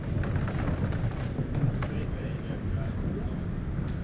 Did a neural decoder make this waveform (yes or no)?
no